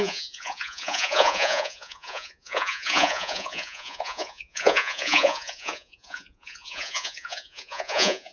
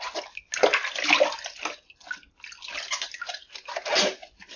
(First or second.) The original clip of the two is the second